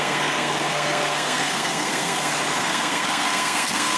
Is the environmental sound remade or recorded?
remade